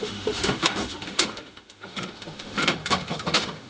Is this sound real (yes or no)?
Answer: no